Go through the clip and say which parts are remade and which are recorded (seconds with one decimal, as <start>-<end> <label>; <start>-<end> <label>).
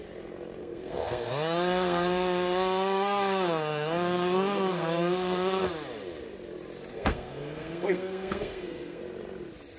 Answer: 0.0-0.6 recorded; 0.6-5.6 remade; 5.6-6.9 recorded; 6.9-9.0 remade; 9.0-9.8 recorded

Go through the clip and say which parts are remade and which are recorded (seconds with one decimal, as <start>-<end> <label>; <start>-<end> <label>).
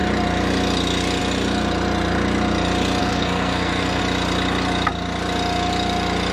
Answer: 0.0-3.0 recorded; 3.0-4.0 remade; 4.0-6.3 recorded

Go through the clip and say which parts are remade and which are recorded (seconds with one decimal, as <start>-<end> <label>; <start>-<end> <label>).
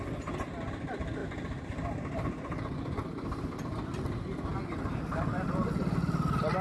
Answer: 0.0-6.6 recorded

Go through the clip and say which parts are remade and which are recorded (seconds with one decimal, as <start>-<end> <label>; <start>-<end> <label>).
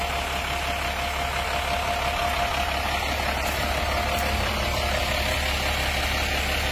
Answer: 0.0-6.7 recorded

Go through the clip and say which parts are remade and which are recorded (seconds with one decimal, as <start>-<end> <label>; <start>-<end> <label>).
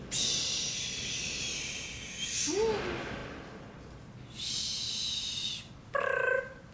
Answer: 0.0-6.7 recorded